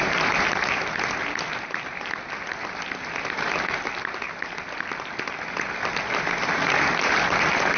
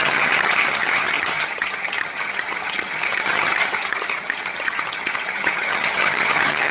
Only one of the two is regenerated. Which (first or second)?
second